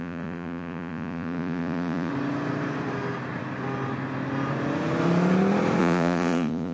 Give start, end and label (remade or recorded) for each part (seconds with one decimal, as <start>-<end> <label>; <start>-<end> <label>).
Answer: 0.0-2.1 remade; 2.1-5.8 recorded; 5.8-6.7 remade